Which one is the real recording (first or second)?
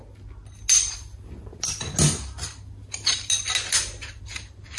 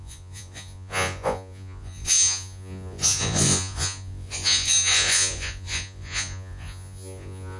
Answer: first